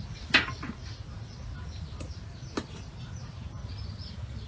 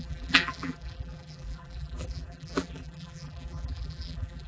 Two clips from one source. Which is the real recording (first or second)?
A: first